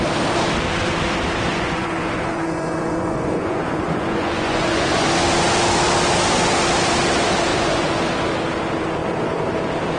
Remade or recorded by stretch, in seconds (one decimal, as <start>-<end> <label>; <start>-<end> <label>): 0.0-1.5 recorded; 1.5-5.1 remade; 5.1-7.5 recorded; 7.5-8.0 remade; 8.0-10.0 recorded